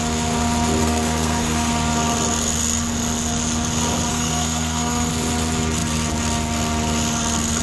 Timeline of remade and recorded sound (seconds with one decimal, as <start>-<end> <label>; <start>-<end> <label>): 0.0-0.8 recorded; 0.8-1.7 remade; 1.7-4.1 recorded; 4.1-5.1 remade; 5.1-7.6 recorded